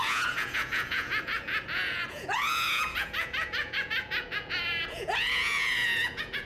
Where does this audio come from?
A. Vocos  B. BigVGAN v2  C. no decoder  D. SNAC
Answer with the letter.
A